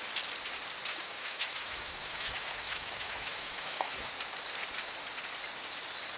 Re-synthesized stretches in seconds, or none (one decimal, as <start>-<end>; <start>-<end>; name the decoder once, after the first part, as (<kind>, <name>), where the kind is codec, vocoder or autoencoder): 0.9-4.1 (autoencoder, DAC-VAE)